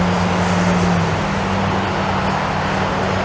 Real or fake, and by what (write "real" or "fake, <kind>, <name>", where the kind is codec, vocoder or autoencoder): real